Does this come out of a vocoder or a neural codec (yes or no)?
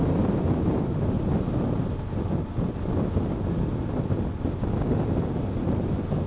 no